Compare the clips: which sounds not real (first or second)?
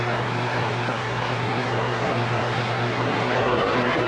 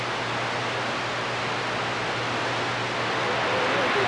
first